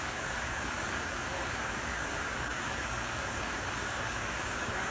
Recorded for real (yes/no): no